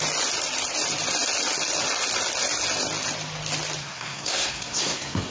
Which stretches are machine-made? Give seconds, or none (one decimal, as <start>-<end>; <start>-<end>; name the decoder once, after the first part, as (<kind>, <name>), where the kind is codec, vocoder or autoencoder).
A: 3.8-5.3 (codec, SNAC)